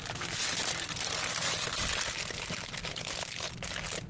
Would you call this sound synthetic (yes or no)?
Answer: no